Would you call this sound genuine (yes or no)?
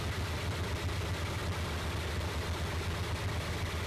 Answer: yes